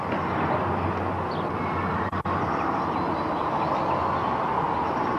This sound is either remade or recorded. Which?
recorded